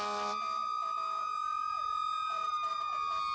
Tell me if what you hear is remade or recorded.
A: recorded